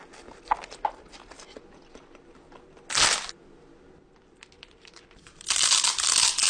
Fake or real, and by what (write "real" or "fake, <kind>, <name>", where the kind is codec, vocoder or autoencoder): real